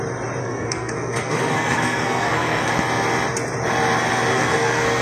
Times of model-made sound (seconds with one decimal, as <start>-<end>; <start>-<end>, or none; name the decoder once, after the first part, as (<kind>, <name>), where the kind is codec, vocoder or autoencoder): 0.4-2.7 (codec, SNAC); 4.3-5.0